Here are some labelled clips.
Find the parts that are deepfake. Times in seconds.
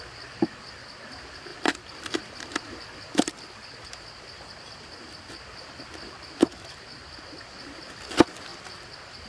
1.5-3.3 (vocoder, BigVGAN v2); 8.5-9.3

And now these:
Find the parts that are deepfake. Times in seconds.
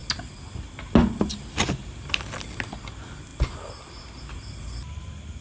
none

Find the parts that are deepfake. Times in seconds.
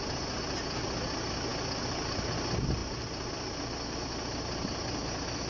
none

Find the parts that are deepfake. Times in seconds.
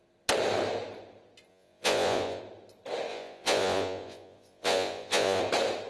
1.5-2.4 (vocoder, Vocos); 3.1-5.4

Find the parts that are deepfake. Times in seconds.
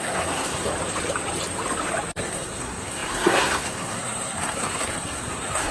0.0-0.7 (codec, SNAC); 2.1-5.7